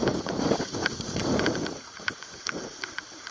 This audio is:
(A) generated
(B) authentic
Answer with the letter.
A